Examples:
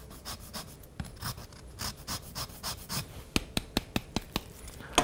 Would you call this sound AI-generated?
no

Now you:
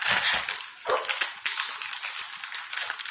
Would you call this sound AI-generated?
no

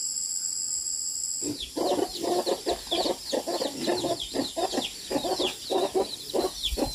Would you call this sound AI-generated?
no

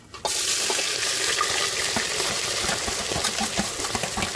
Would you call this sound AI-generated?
no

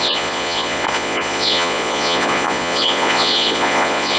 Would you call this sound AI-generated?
yes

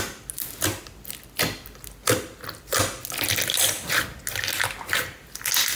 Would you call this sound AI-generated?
no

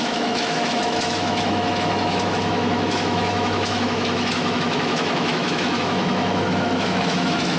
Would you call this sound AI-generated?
yes